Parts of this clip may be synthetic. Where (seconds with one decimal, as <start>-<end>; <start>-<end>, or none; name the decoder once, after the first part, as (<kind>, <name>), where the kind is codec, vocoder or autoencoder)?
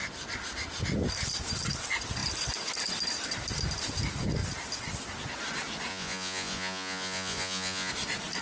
5.9-7.9 (vocoder, Vocos)